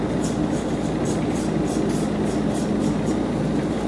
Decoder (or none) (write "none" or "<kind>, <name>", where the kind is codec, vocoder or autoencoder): none